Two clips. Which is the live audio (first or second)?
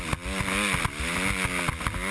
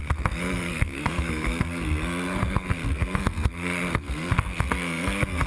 first